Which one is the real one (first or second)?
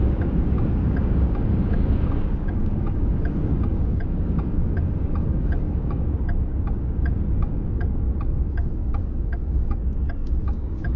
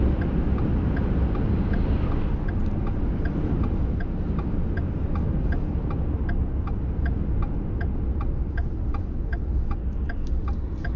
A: second